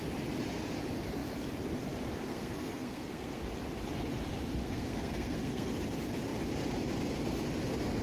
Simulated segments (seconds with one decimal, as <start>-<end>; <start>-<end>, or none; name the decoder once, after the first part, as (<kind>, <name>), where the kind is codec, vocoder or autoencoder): 2.3-3.4 (codec, SNAC); 4.6-5.8

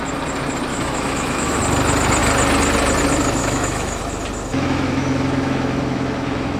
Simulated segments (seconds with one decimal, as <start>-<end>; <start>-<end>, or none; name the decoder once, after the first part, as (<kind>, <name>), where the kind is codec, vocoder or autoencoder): 0.7-1.6 (autoencoder, DAC-VAE); 3.4-4.0; 4.5-6.6